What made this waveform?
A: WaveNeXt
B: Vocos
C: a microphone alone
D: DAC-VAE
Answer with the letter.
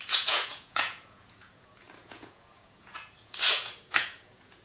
B